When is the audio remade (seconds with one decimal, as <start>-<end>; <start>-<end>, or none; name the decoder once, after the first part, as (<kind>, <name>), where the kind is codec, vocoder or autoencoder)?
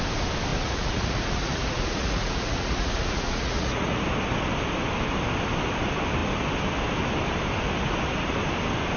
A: 0.5-4.0 (vocoder, Vocos)